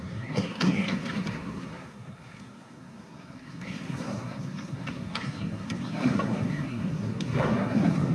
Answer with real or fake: fake